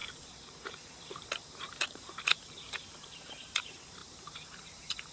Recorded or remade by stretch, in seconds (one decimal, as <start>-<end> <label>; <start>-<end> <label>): 0.0-5.1 remade